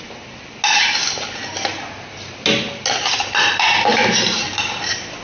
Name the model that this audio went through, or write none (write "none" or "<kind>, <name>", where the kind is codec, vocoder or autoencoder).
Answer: none